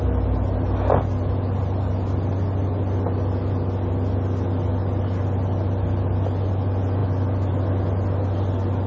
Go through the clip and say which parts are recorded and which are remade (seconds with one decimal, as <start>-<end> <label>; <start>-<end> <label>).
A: 0.0-8.9 recorded